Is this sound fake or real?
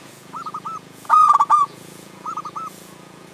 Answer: fake